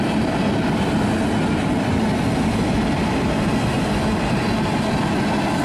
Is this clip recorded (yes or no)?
yes